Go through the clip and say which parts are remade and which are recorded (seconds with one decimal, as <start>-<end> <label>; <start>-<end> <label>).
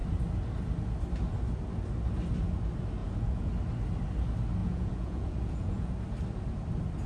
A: 0.0-3.0 recorded; 3.0-3.5 remade; 3.5-4.6 recorded; 4.6-5.9 remade; 5.9-7.1 recorded